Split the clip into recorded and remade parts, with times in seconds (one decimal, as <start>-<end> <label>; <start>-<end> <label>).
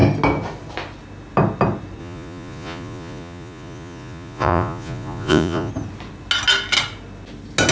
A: 0.0-2.0 recorded; 2.0-5.7 remade; 5.7-7.7 recorded